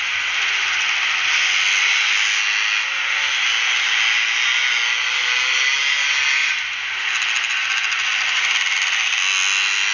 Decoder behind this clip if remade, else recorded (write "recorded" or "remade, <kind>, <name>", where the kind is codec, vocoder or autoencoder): recorded